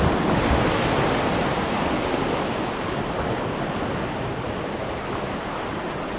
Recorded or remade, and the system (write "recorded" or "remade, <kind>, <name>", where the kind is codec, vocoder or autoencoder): recorded